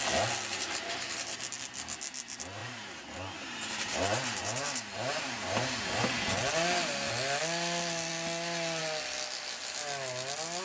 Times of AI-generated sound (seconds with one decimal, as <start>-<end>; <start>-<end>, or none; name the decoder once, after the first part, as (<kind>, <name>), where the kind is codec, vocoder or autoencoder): 0.5-1.4 (vocoder, BigVGAN v2); 2.6-7.1